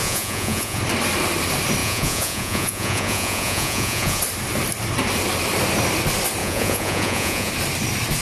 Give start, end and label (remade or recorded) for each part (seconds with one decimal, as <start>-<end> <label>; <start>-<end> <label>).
0.0-0.8 remade; 0.8-1.8 recorded; 1.8-4.2 remade; 4.2-6.4 recorded; 6.4-7.5 remade; 7.5-8.2 recorded